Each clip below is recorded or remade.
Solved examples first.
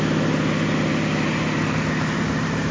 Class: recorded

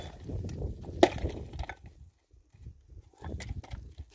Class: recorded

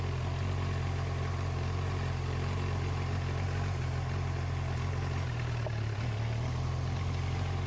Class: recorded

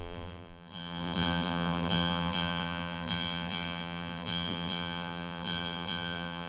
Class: remade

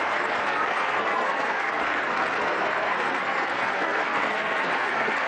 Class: remade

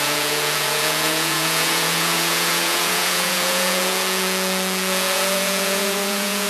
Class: remade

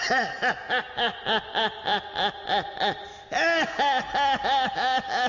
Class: recorded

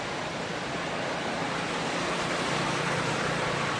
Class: recorded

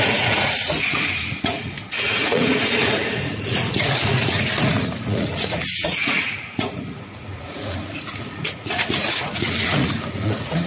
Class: remade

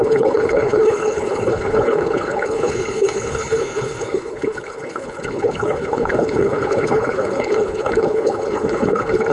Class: remade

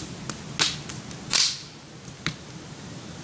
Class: recorded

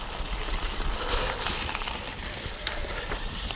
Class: recorded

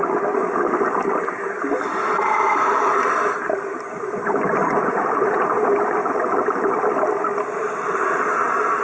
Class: remade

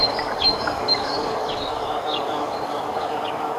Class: remade